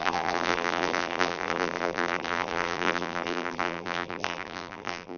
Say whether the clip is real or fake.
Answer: fake